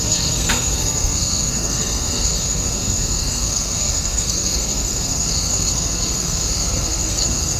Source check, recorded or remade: remade